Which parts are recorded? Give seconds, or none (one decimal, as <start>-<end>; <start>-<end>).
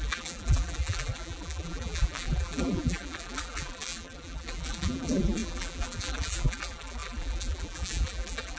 none